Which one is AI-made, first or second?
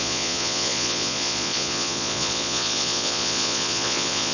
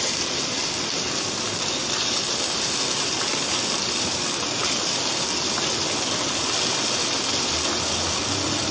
first